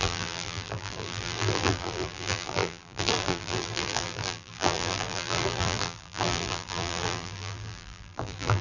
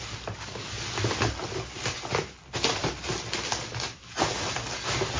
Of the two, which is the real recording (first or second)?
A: second